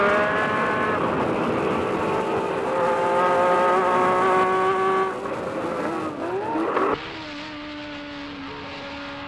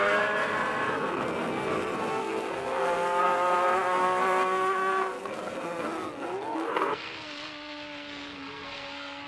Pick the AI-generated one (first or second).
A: second